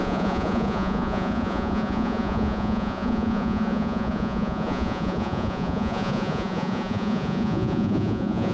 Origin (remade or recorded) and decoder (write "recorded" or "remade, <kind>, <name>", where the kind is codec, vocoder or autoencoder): remade, vocoder, Vocos